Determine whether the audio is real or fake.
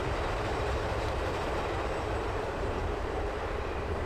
fake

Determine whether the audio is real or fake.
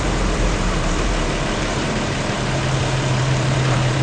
fake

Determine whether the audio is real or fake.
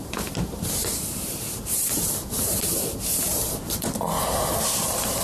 fake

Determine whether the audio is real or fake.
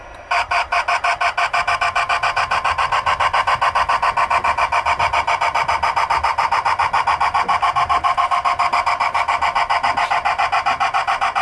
real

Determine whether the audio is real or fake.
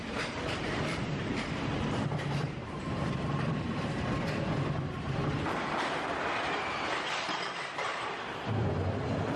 fake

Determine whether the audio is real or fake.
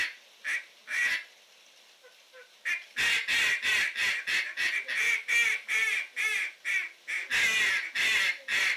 real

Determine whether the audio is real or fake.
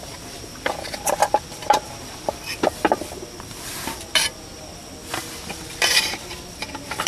fake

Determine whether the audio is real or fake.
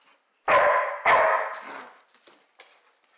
real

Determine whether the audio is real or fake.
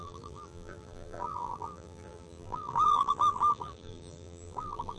fake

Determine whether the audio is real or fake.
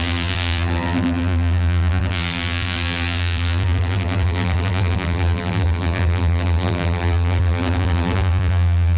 fake